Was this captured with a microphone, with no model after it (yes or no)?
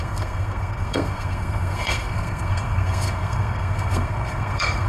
no